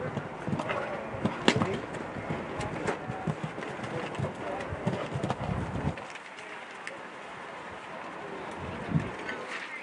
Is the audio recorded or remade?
recorded